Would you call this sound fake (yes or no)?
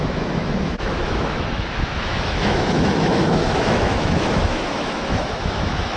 yes